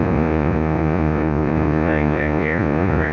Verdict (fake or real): fake